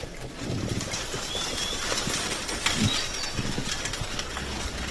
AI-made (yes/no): no